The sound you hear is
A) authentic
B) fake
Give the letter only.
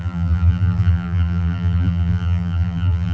B